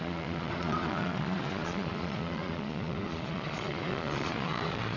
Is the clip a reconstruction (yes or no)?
yes